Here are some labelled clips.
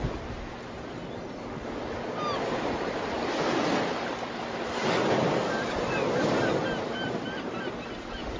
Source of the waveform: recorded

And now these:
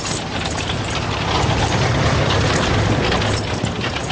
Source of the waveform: recorded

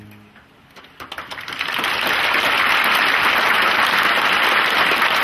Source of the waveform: recorded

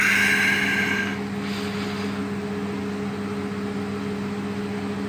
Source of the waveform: recorded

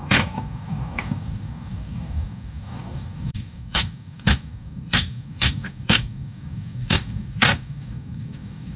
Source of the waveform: remade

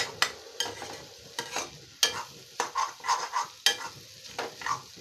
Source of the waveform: recorded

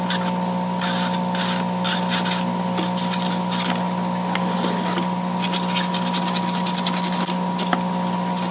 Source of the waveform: recorded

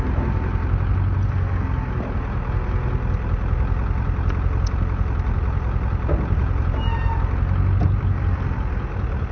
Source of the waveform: recorded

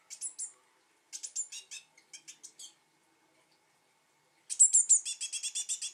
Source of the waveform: recorded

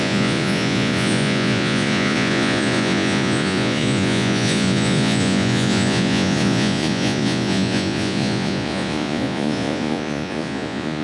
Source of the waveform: remade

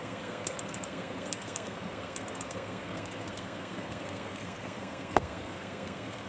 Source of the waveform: remade